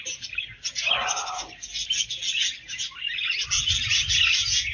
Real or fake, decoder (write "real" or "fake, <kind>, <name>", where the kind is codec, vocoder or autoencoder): real